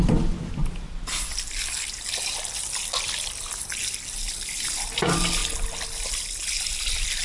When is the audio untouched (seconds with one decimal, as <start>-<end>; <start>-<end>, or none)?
0.0-7.2